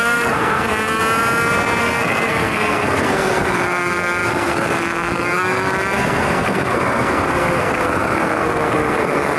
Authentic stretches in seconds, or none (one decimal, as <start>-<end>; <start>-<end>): 1.0-1.8